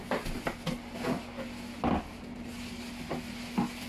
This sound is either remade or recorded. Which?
recorded